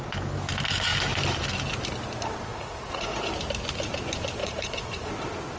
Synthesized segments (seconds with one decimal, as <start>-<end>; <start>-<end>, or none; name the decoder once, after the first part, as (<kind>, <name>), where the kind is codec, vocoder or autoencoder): 2.5-3.3 (vocoder, Vocos); 4.4-5.1